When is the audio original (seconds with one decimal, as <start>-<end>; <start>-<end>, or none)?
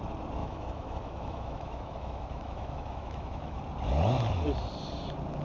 0.0-0.4; 3.6-5.4